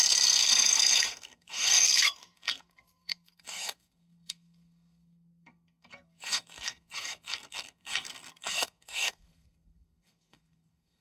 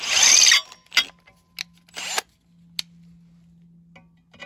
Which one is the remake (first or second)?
first